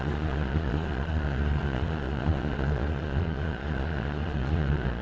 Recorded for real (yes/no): no